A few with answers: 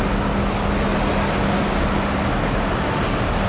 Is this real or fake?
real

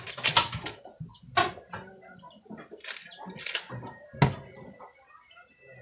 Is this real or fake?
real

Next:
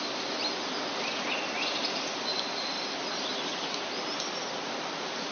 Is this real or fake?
real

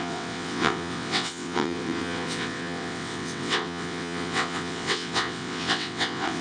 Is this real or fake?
fake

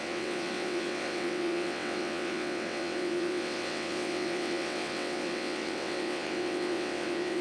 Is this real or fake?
fake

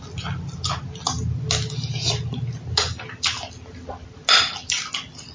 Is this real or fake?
real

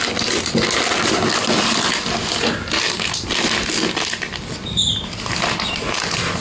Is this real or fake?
real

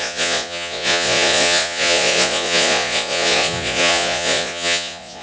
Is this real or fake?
fake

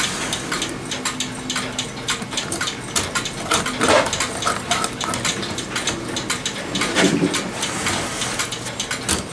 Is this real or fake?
real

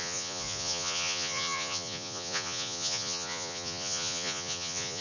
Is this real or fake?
fake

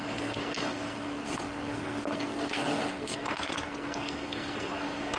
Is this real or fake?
fake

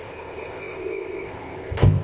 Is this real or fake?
fake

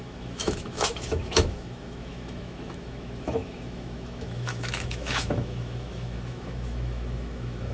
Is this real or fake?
fake